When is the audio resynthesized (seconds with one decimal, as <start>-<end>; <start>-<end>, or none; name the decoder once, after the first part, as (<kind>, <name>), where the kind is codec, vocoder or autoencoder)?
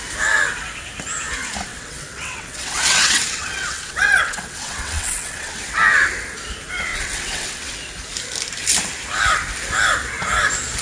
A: 1.7-5.6 (vocoder, WaveNeXt); 6.9-7.7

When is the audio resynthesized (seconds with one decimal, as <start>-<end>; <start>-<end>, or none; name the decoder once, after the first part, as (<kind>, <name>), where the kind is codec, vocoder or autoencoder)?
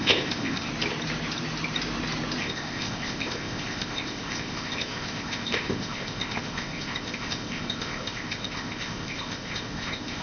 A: 0.0-0.7 (codec, ZipCodec); 2.4-10.2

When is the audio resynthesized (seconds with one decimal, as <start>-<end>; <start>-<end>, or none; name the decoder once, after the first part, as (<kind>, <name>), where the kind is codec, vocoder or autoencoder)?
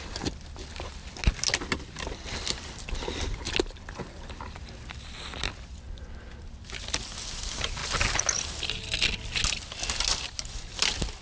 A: none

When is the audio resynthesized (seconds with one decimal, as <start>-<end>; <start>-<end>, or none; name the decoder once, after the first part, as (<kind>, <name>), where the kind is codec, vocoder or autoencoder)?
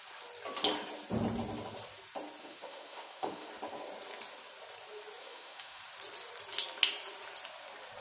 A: 2.4-3.5 (autoencoder, DAC-VAE); 5.2-5.8